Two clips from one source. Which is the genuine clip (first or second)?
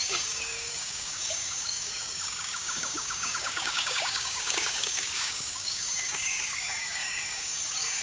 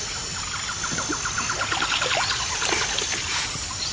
second